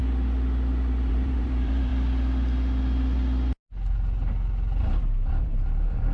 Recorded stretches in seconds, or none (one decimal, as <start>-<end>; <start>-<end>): 0.0-1.1; 1.9-5.3